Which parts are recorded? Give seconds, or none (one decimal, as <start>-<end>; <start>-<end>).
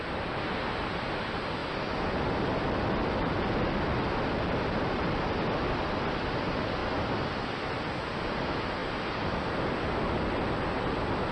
0.0-11.3